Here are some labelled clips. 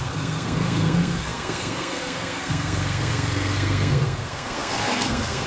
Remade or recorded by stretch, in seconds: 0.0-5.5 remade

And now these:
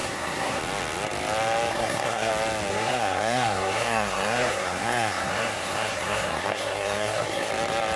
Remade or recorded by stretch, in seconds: 0.0-0.6 remade; 0.6-1.7 recorded; 1.7-2.3 remade; 2.3-2.7 recorded; 2.7-7.5 remade; 7.5-8.0 recorded

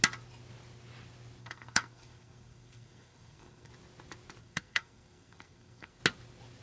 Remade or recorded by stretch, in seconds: 0.0-1.4 recorded; 1.4-3.7 remade; 3.7-4.4 recorded; 4.4-6.0 remade; 6.0-6.6 recorded